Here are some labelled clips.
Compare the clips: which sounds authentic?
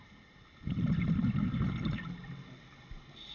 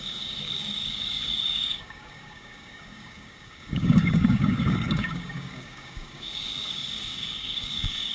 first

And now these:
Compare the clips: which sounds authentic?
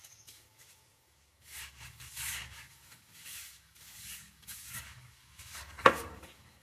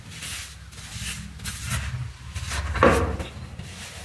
second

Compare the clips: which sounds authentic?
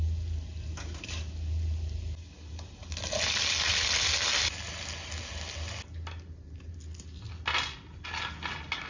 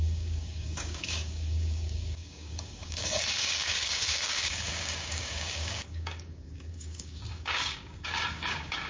first